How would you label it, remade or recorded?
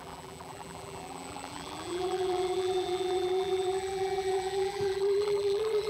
remade